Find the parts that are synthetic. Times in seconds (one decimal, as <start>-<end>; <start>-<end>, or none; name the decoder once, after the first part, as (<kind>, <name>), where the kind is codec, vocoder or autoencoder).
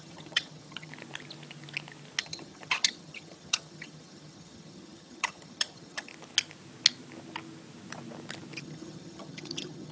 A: 0.0-0.9 (vocoder, HiFi-GAN); 2.2-6.1; 8.6-9.9